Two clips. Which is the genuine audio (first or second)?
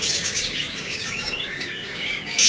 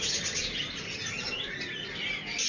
second